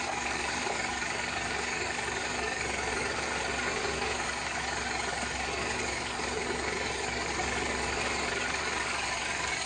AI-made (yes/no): yes